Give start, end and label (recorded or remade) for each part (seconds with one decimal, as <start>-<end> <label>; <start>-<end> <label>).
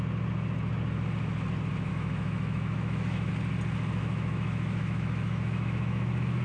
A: 0.0-1.9 recorded; 1.9-3.3 remade; 3.3-4.0 recorded; 4.0-6.4 remade